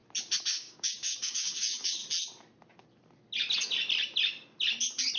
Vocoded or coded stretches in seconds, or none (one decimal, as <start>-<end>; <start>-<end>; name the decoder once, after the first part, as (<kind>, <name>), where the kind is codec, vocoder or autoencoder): 0.5-2.0 (codec, DAC)